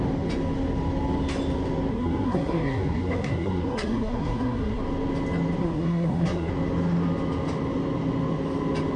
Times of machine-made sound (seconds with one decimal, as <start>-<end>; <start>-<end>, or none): 1.9-4.8; 5.6-6.5